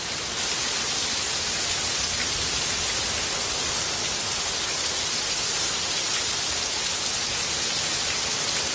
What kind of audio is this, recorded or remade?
remade